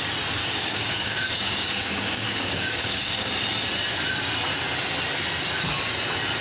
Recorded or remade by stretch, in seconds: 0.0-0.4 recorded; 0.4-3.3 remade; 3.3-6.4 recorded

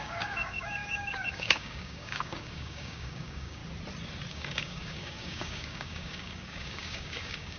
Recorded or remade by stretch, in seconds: 0.0-3.6 remade; 3.6-4.3 recorded; 4.3-7.6 remade

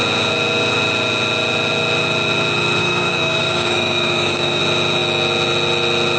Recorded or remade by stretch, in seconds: 0.0-2.8 recorded; 2.8-4.6 remade; 4.6-6.2 recorded